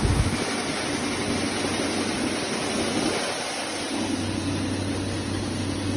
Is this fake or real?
real